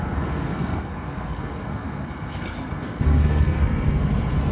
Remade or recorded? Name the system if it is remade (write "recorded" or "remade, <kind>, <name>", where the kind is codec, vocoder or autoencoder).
remade, codec, SNAC